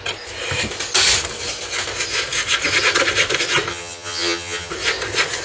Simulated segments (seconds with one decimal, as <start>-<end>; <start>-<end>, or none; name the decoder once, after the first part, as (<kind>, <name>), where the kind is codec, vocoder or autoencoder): 3.7-4.7 (vocoder, HiFi-GAN)